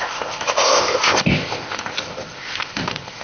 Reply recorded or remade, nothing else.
remade